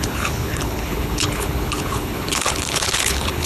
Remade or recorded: remade